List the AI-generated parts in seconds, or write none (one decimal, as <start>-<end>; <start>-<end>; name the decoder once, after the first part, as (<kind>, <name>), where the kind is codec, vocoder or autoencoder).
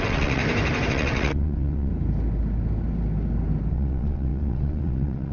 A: 0.0-0.4 (vocoder, WaveNeXt); 0.9-1.9; 3.7-5.3